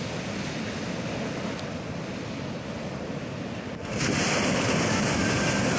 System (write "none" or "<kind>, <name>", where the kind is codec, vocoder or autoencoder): none